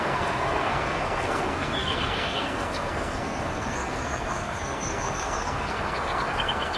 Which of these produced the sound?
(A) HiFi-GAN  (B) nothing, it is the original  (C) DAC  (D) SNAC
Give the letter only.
D